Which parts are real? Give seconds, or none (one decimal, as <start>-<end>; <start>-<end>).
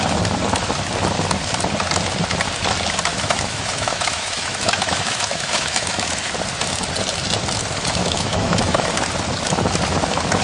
0.0-3.1; 6.3-8.0; 8.9-10.4